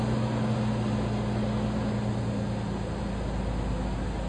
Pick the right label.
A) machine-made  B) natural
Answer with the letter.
B